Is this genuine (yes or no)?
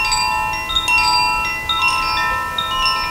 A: yes